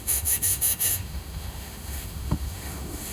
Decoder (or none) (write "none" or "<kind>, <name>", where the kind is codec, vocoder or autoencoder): autoencoder, DAC-VAE